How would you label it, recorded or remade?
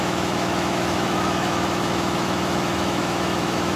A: remade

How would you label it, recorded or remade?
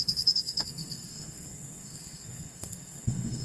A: remade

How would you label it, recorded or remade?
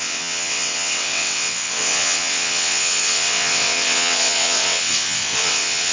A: remade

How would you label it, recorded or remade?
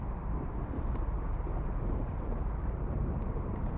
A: recorded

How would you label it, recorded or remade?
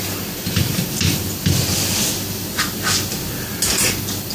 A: recorded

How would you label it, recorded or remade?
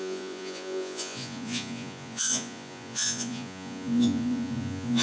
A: remade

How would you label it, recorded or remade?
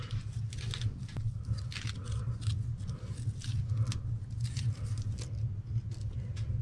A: recorded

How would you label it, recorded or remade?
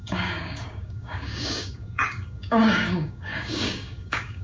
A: remade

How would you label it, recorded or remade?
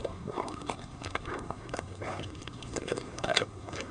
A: remade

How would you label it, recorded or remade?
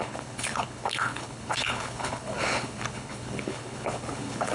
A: remade